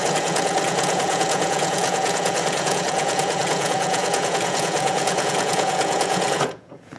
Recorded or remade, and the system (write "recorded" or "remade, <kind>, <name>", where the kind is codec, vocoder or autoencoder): remade, vocoder, Vocos